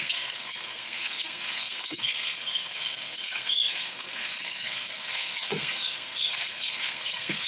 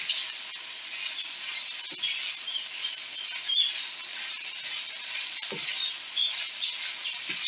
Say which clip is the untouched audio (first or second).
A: second